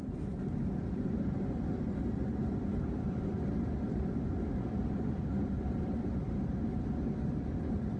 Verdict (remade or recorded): recorded